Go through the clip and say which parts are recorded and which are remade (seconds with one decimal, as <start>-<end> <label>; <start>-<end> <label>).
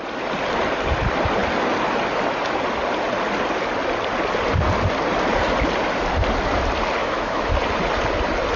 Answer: 0.0-7.0 recorded; 7.0-7.5 remade; 7.5-8.6 recorded